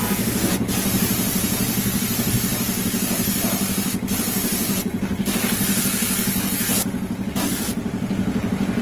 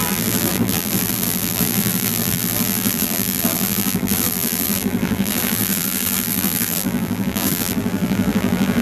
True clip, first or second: first